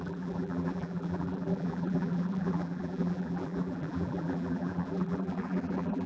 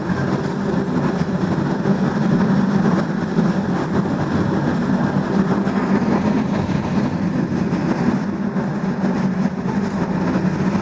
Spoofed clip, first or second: first